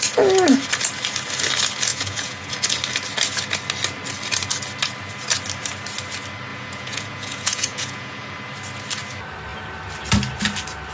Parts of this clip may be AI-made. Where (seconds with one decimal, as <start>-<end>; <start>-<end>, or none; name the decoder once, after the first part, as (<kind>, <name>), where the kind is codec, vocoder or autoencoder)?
1.9-2.5 (vocoder, Vocos); 6.5-8.3